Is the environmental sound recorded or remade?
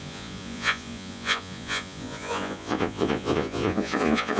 remade